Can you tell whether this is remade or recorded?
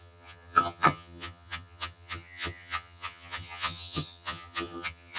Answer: remade